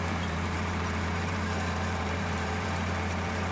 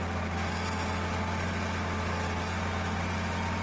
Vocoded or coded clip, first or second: first